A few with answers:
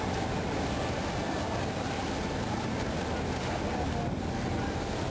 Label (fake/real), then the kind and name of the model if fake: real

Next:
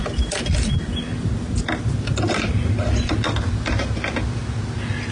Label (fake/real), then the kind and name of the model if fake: real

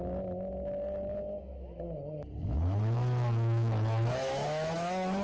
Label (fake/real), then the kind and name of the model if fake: fake, autoencoder, DAC-VAE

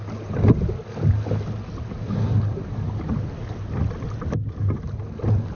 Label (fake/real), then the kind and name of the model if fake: real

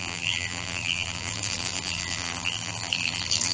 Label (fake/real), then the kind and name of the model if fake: fake, vocoder, BigVGAN v2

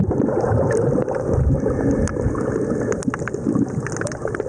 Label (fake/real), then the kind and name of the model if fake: real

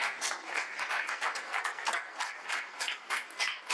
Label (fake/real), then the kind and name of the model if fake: fake, codec, SNAC